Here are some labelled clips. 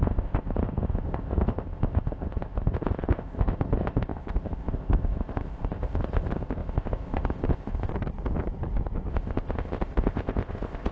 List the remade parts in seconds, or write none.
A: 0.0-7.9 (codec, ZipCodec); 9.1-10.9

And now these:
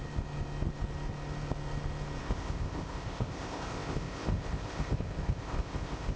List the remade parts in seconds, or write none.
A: 2.2-6.2 (codec, ZipCodec)

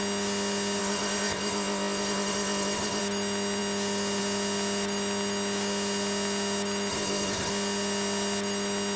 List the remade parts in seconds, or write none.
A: 0.8-3.0 (codec, ZipCodec); 6.9-7.5

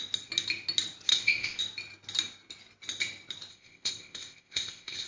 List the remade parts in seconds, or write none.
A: 1.1-1.6 (codec, ZipCodec); 3.5-5.1

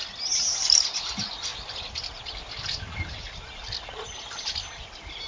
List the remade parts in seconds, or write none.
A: none

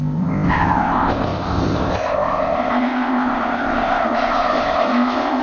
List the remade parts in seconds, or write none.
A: 0.0-5.4 (codec, ZipCodec)

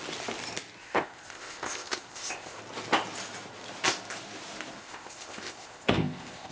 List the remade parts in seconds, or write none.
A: 0.8-2.6 (codec, ZipCodec); 4.8-6.5

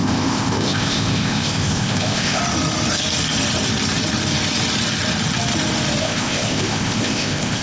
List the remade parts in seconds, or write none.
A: 0.0-2.4 (codec, ZipCodec); 6.0-7.6